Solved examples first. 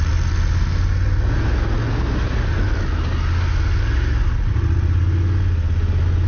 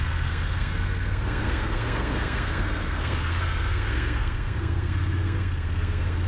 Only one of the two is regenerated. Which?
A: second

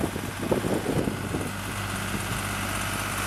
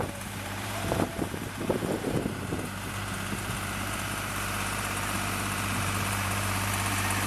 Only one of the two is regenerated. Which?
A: second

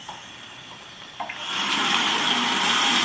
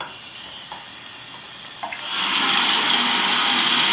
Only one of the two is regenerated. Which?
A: first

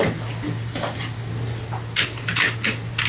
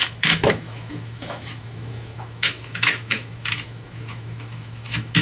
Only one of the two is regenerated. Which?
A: second